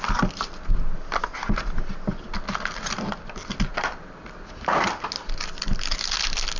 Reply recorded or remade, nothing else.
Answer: recorded